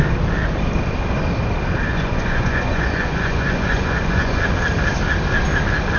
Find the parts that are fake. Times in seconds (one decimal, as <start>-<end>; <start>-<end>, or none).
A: 1.9-4.4